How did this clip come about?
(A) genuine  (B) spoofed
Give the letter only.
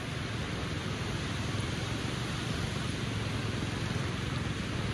A